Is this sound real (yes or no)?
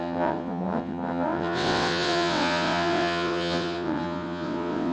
no